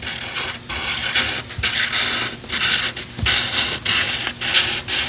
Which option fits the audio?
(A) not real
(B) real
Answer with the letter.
B